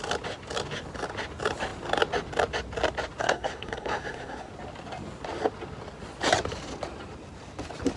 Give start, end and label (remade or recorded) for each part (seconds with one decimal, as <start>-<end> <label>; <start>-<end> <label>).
0.0-3.2 recorded; 3.2-4.5 remade; 4.5-8.0 recorded